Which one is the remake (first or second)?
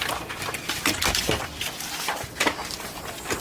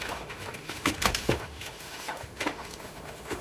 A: second